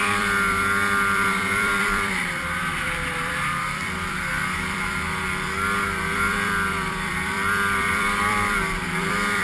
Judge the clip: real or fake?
fake